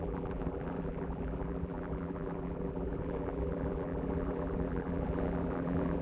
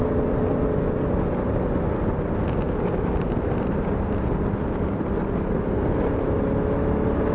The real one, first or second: second